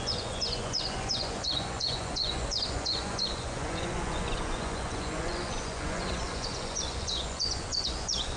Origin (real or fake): fake